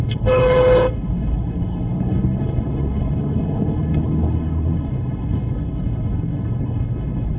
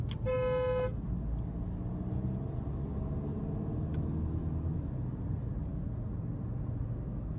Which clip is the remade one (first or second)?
first